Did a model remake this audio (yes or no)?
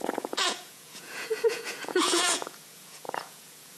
yes